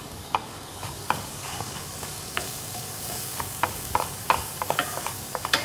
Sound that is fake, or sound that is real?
fake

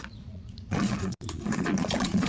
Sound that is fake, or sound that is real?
fake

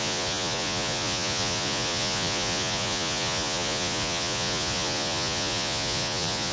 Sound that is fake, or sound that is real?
fake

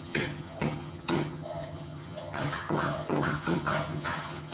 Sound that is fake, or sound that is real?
fake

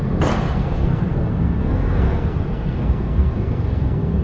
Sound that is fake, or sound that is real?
fake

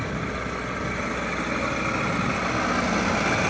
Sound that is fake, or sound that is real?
real